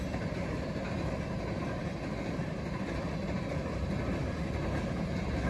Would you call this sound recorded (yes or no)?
yes